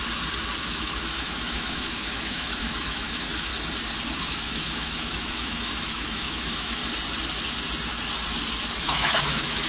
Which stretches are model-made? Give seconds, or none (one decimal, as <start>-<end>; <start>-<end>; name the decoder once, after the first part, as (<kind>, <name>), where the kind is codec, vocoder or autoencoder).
0.6-3.5 (autoencoder, DAC-VAE); 4.2-6.8; 8.8-9.7